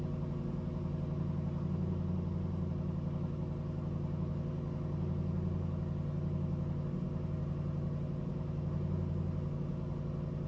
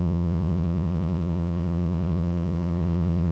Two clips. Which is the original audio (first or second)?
first